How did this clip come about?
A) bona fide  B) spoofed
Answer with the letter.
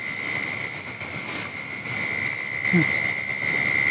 A